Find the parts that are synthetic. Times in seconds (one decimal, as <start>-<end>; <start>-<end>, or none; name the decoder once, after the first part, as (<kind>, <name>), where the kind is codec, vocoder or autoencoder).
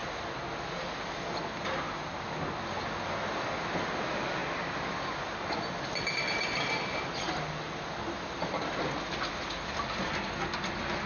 none